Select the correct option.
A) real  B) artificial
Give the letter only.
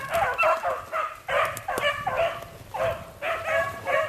A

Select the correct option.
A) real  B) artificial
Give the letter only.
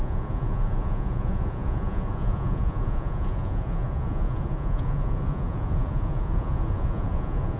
B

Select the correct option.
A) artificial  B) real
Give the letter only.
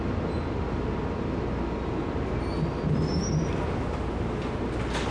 B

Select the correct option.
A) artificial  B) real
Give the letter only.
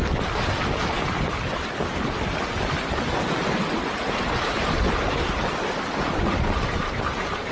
B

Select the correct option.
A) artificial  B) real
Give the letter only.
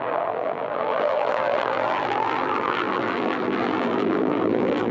A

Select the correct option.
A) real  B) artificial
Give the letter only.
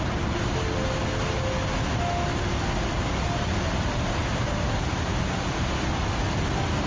A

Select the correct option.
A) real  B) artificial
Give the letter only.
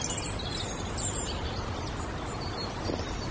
A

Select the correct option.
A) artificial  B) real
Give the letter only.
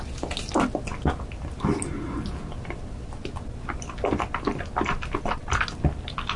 B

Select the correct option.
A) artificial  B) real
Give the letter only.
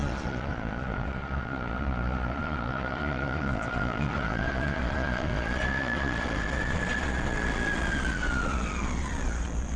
A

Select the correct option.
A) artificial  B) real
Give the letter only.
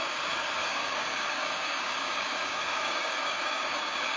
A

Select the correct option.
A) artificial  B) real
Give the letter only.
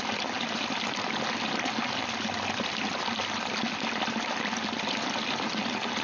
B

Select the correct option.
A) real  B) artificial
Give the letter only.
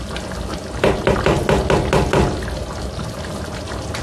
A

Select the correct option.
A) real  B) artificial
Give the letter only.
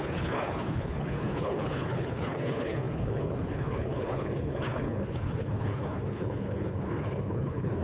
B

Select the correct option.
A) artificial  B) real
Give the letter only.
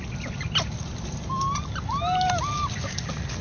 B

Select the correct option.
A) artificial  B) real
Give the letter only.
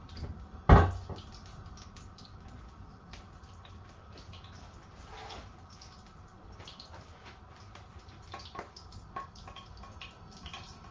B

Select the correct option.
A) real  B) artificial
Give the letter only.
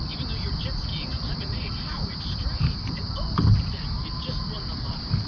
A